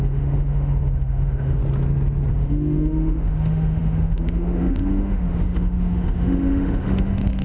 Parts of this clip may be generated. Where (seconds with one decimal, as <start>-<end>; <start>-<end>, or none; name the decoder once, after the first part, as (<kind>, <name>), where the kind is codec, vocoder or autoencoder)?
0.0-1.6 (autoencoder, DAC-VAE); 2.3-7.4